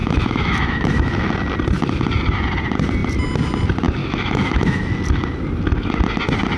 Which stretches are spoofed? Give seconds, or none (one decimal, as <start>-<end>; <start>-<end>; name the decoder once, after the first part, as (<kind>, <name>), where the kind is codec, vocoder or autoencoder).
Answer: 0.0-1.3 (autoencoder, DAC-VAE); 4.0-4.8